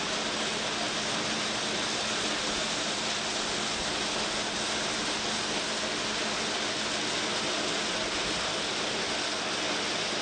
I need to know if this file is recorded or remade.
recorded